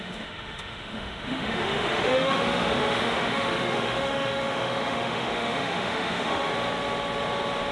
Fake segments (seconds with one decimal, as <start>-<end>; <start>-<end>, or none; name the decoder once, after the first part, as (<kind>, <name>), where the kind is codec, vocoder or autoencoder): 0.0-6.5 (autoencoder, DAC-VAE)